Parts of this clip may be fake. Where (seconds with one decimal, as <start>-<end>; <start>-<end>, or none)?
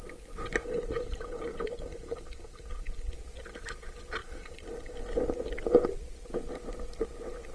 0.6-3.1; 4.2-5.1